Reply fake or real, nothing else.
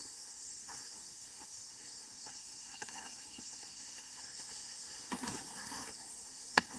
fake